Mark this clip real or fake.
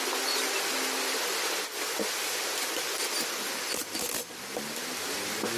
real